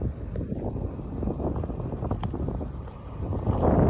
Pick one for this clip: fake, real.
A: real